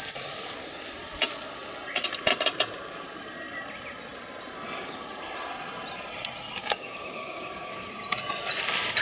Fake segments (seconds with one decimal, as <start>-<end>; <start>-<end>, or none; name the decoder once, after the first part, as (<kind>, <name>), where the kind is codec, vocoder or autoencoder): 6.6-7.9 (codec, DAC)